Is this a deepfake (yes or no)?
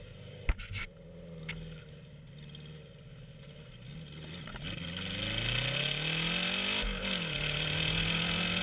no